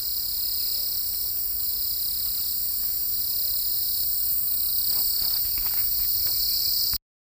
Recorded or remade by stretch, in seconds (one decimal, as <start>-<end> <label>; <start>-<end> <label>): 0.0-7.2 recorded